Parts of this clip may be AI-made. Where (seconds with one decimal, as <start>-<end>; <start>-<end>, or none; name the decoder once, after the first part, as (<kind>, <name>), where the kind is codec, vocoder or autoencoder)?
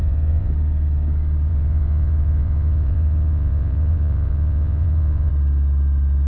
0.0-0.5 (vocoder, Vocos); 1.5-5.3